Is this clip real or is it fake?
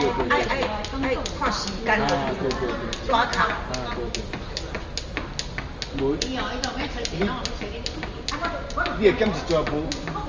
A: real